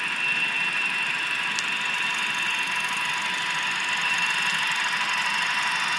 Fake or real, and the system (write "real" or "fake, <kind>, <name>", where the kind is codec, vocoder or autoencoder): real